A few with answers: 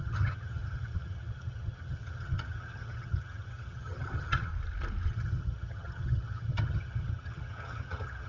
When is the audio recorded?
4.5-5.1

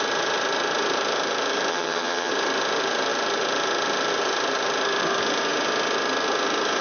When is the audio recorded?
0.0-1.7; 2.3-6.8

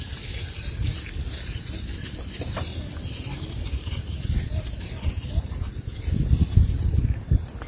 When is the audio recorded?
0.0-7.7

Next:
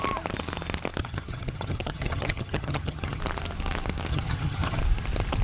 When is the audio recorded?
0.0-1.0; 3.2-4.1; 4.8-5.4

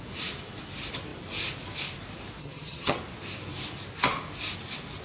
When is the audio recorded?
0.0-2.4; 3.0-5.0